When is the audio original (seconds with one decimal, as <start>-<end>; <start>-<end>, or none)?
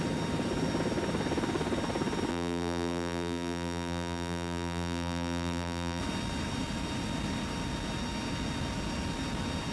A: 0.0-2.3; 6.0-9.7